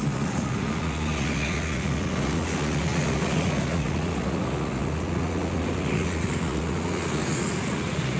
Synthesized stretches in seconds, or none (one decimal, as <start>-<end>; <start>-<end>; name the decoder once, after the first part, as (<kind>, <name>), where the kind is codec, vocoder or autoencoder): 0.0-8.2 (vocoder, Vocos)